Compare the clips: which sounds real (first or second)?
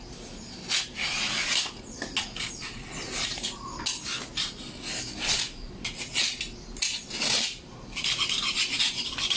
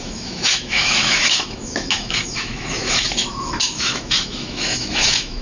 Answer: first